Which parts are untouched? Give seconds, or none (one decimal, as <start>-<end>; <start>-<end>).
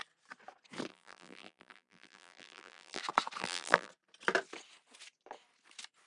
0.0-0.9; 3.0-3.4; 3.9-6.1